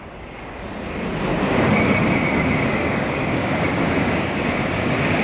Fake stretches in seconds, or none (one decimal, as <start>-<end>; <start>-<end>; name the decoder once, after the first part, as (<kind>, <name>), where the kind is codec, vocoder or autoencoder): 1.3-2.0 (codec, DAC); 2.7-5.2